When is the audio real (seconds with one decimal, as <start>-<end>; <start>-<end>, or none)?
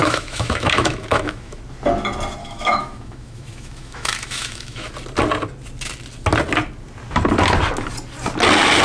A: 1.6-2.4; 4.9-8.8